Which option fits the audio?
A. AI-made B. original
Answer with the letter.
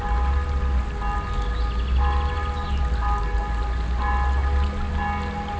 B